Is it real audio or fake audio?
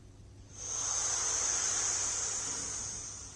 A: real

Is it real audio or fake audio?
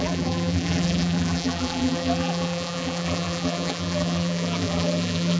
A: fake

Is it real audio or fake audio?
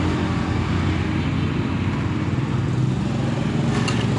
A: real